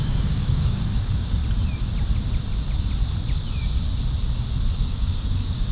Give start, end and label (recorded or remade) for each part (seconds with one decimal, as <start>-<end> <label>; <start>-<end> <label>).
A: 0.0-1.4 remade; 1.4-4.8 recorded; 4.8-5.7 remade